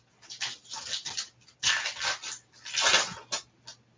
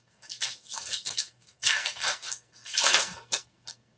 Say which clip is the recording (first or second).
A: first